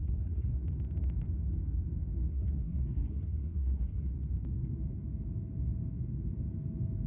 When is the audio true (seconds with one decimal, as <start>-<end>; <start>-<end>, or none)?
0.6-2.3; 4.1-7.1